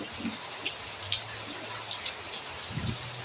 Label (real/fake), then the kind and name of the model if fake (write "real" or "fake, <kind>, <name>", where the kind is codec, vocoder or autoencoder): real